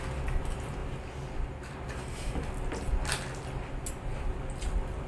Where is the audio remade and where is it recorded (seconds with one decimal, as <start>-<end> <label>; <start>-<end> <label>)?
0.0-5.1 recorded

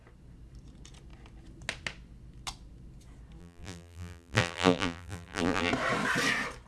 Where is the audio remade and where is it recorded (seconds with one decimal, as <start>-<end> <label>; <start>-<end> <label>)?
0.0-3.4 recorded; 3.4-5.7 remade; 5.7-6.7 recorded

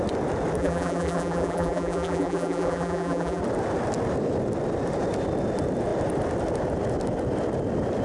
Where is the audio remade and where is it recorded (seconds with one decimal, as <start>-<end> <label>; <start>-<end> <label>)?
0.0-0.6 recorded; 0.6-3.4 remade; 3.4-8.0 recorded

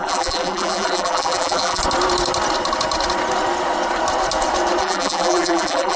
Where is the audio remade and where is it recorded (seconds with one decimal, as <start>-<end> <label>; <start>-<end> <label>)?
0.0-1.8 remade; 1.8-4.8 recorded; 4.8-6.0 remade

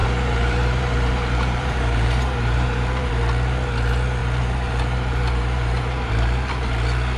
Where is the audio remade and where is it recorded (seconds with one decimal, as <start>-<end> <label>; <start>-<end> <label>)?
0.0-3.1 remade; 3.1-4.2 recorded; 4.2-6.1 remade; 6.1-7.2 recorded

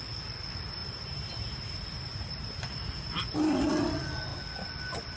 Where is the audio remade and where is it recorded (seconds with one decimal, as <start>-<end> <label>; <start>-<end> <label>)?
0.0-0.8 recorded; 0.8-3.9 remade; 3.9-5.2 recorded

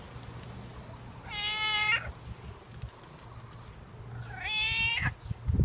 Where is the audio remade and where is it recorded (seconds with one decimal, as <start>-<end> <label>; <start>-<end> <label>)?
0.0-4.9 recorded; 4.9-5.6 remade